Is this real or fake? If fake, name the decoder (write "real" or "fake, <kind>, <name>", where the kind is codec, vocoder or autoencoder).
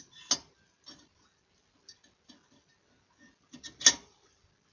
real